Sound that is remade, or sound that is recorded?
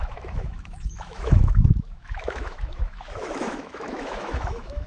remade